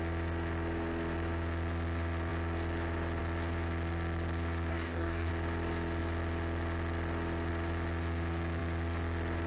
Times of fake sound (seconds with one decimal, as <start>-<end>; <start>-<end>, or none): 4.7-5.3